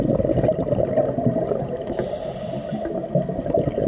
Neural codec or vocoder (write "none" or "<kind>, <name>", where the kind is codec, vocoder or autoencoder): none